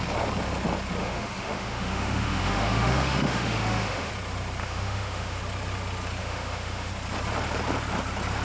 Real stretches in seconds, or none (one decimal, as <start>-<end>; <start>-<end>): 0.0-1.0; 4.1-4.6; 5.4-6.2; 6.9-8.4